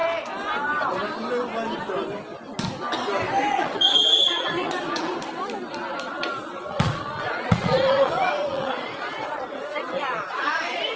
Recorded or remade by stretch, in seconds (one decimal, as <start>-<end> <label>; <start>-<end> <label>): 0.0-3.5 recorded; 3.5-5.1 remade; 5.1-6.1 recorded; 6.1-11.0 remade